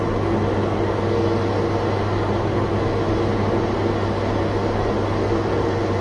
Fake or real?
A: real